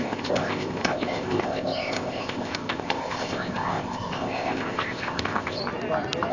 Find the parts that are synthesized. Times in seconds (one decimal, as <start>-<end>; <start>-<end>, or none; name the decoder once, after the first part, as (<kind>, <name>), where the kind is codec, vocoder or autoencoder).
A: 0.0-5.6 (codec, ZipCodec)